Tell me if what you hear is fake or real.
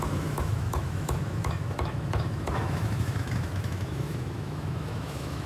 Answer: fake